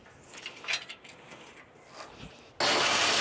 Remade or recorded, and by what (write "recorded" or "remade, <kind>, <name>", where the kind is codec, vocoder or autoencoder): recorded